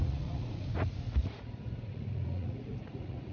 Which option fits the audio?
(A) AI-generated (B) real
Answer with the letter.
A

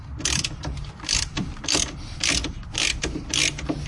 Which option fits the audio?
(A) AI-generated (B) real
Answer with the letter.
B